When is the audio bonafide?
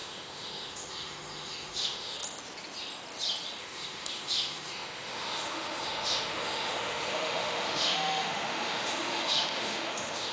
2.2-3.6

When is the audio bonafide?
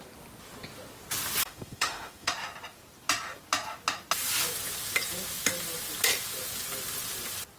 0.0-1.4; 2.3-7.6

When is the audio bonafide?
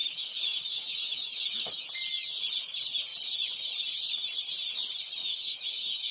1.9-5.2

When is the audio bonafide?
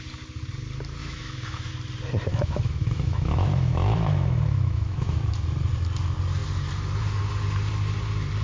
0.0-1.0; 1.7-2.3; 5.3-8.4